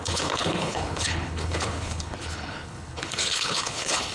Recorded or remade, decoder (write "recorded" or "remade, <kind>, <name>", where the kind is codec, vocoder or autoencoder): remade, codec, HILCodec